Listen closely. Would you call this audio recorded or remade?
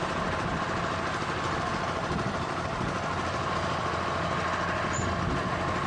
recorded